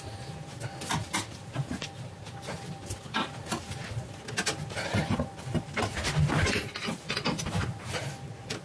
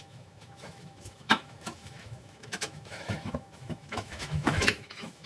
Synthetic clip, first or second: second